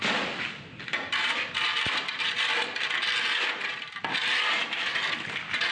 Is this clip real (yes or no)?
yes